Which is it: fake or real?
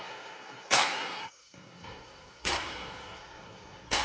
fake